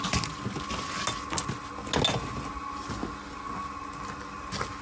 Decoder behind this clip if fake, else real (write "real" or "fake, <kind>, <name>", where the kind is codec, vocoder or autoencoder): real